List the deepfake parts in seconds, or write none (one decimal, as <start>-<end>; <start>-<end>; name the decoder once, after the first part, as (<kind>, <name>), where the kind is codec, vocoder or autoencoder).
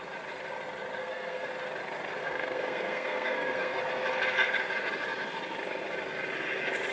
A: 1.0-1.5 (codec, SNAC); 2.2-3.8